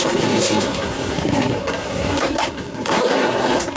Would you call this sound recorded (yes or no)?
no